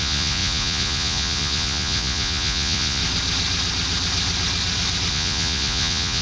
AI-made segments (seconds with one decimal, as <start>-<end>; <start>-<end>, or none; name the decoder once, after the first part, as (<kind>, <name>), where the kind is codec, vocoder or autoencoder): 0.0-3.0 (vocoder, Vocos); 5.1-6.2